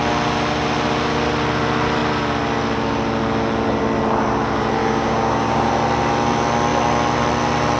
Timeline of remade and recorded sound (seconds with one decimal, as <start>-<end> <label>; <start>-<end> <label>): 0.0-4.8 recorded; 4.8-5.7 remade; 5.7-7.8 recorded